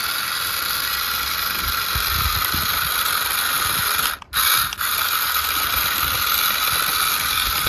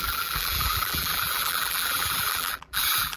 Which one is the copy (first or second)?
second